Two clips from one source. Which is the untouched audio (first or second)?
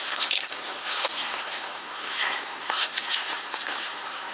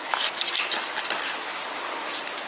second